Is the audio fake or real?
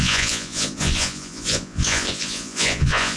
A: fake